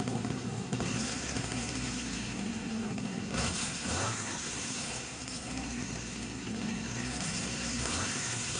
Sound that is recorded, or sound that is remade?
remade